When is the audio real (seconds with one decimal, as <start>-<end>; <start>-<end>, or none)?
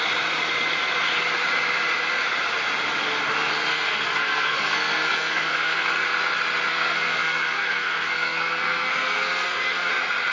0.0-3.7; 5.9-6.7; 9.9-10.3